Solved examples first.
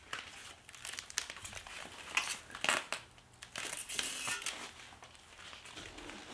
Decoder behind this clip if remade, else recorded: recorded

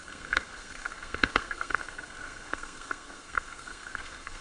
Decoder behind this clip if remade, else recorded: remade, codec, SNAC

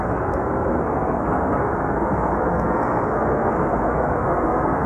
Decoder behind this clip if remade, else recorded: remade, codec, SNAC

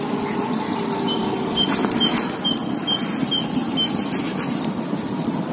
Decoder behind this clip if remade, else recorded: recorded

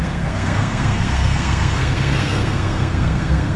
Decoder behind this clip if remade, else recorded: remade, codec, SNAC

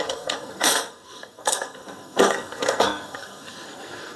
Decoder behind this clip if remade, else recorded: remade, codec, SNAC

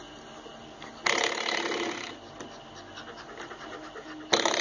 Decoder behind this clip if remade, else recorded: recorded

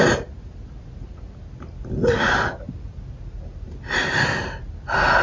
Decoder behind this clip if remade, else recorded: recorded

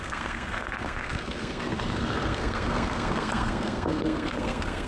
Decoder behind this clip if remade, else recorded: remade, codec, SNAC